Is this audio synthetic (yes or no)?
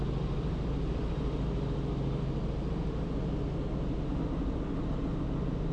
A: no